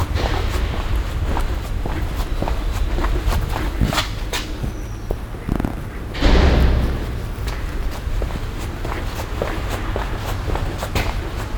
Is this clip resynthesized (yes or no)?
no